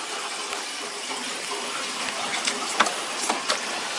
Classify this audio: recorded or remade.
recorded